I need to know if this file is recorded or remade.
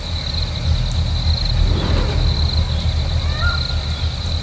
recorded